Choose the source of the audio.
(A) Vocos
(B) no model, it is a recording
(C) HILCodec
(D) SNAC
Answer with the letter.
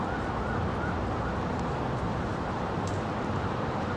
B